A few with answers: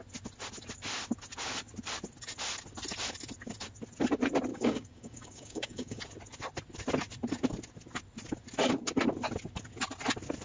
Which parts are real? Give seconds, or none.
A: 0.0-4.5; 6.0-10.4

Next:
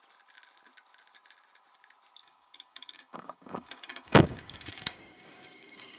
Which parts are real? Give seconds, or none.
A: 0.0-2.2